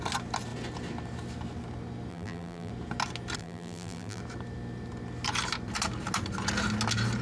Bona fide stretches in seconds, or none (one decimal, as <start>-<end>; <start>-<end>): 0.0-2.1; 2.7-3.4; 4.2-7.2

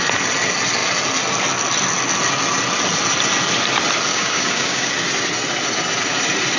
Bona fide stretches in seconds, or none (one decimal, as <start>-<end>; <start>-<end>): 0.0-4.1; 4.9-6.6